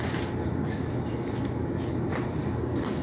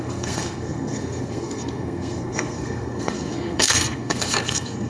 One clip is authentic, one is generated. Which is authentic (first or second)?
first